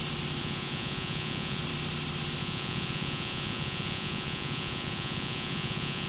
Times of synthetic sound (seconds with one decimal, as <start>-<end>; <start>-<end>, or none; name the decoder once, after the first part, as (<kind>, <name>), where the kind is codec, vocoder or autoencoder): 0.4-1.6 (vocoder, Vocos); 2.4-6.1